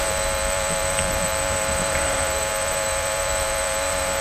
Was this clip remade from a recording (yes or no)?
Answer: yes